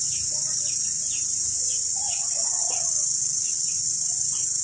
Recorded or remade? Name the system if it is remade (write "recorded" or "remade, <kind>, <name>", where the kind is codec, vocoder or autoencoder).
recorded